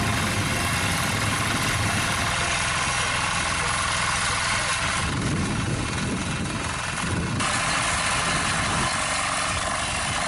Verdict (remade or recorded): recorded